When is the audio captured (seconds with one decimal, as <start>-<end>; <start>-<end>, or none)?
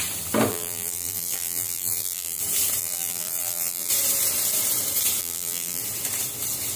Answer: 0.0-0.5; 2.4-2.8; 3.9-5.2; 5.8-6.8